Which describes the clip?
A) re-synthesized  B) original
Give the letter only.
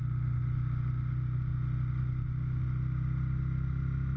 B